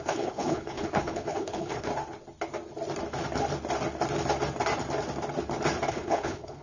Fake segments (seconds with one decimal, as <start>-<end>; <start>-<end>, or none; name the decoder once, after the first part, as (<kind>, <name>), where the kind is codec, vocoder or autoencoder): 0.0-1.9 (codec, HILCodec); 5.9-6.6